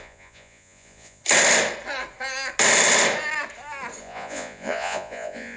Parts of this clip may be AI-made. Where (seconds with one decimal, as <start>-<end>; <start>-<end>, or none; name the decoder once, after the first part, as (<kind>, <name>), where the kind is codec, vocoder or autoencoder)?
0.0-1.2 (vocoder, Vocos); 4.0-5.6